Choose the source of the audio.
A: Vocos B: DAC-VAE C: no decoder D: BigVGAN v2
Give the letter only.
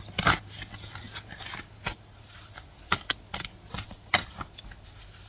C